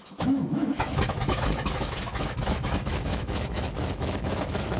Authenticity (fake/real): fake